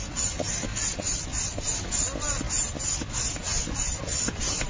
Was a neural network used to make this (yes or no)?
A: no